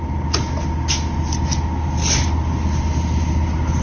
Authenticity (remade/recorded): recorded